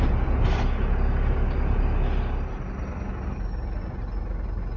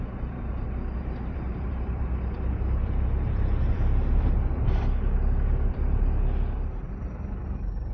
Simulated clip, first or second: second